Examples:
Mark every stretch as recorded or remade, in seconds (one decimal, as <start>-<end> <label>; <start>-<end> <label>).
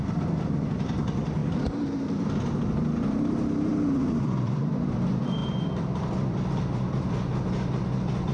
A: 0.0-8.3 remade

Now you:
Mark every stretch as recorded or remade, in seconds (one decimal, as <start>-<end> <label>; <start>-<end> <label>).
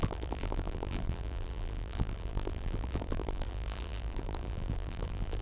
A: 0.0-5.4 remade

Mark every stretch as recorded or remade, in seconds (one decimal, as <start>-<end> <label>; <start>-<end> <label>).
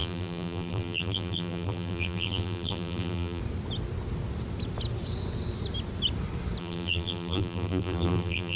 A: 0.0-3.4 remade; 3.4-6.6 recorded; 6.6-8.6 remade